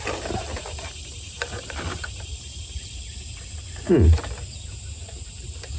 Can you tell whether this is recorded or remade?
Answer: recorded